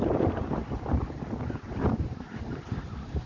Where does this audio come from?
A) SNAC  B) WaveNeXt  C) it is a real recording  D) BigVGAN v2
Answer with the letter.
C